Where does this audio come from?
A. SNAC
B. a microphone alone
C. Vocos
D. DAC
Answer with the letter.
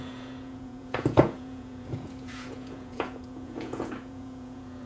C